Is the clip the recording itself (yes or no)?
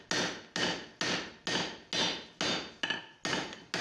yes